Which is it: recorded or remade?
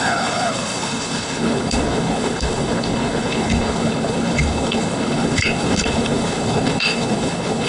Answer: remade